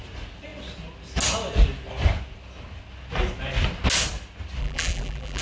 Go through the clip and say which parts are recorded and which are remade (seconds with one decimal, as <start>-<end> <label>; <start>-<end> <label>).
0.0-4.6 recorded; 4.6-5.4 remade